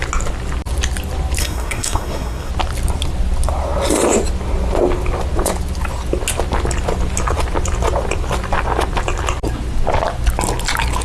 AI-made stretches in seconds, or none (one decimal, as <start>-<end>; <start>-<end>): 1.4-2.5